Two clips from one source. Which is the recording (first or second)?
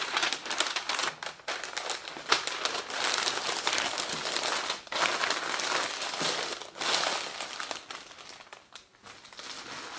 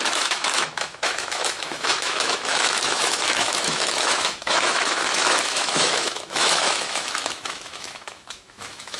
first